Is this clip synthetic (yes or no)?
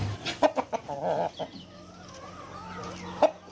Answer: no